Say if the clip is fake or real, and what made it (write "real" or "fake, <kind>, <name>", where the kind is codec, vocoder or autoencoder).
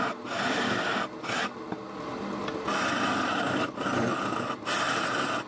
real